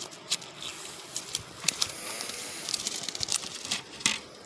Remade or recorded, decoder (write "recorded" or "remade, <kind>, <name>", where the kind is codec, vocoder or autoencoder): recorded